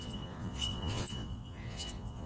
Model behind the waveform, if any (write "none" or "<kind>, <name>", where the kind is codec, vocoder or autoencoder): vocoder, Vocos